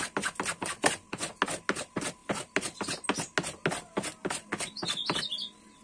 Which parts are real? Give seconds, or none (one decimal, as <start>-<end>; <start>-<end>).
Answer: 0.0-5.8